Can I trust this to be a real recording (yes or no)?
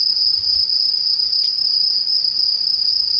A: yes